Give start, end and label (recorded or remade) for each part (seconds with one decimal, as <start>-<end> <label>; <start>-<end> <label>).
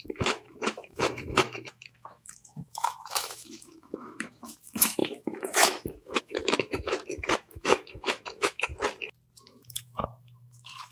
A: 0.0-8.7 remade; 8.7-9.4 recorded; 9.4-10.9 remade